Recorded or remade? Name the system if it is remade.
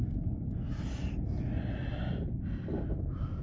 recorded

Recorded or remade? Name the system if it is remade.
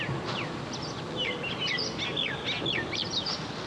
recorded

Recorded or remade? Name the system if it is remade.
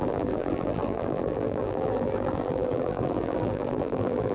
remade, vocoder, BigVGAN v2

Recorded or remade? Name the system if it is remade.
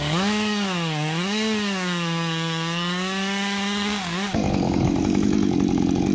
remade, codec, DAC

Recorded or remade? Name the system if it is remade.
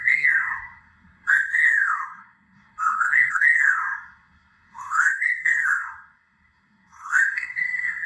remade, codec, SNAC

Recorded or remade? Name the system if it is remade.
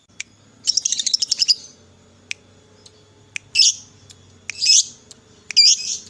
recorded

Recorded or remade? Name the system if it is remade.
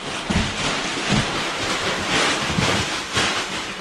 recorded